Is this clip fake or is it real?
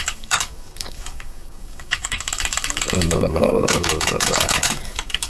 fake